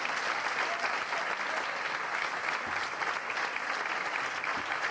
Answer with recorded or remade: recorded